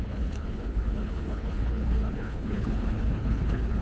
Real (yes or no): no